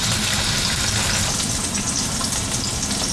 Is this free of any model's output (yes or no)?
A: no